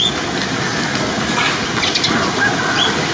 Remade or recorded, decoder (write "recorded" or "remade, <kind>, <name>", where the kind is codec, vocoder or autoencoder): recorded